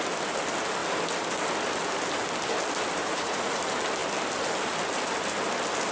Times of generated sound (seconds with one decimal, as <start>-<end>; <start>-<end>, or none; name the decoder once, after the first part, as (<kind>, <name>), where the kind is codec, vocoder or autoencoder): 3.0-3.6 (vocoder, Vocos)